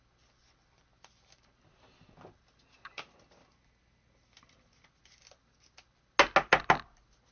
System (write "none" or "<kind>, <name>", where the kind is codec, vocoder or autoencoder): none